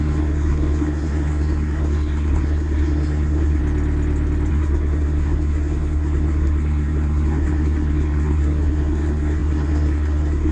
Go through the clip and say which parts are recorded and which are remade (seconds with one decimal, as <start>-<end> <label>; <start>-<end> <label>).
0.0-3.6 remade; 3.6-4.5 recorded; 4.5-10.5 remade